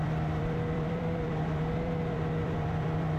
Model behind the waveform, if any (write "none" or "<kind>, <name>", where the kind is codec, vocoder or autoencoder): vocoder, BigVGAN v2